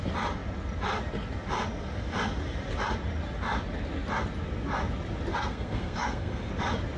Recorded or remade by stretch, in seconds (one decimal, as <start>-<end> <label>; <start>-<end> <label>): 0.0-5.3 recorded; 5.3-6.5 remade; 6.5-7.0 recorded